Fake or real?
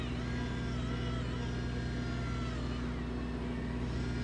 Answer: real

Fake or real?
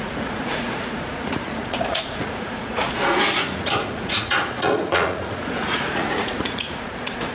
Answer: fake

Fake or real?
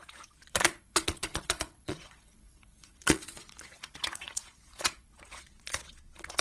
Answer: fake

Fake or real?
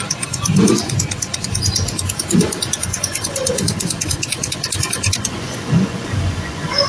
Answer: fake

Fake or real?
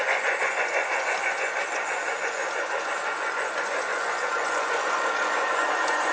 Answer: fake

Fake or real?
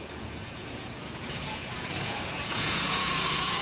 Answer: fake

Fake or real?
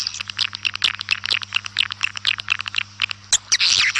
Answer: real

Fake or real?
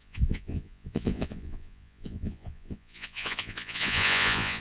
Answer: fake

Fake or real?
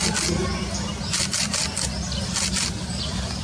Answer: real